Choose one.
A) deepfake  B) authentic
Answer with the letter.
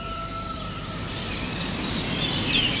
A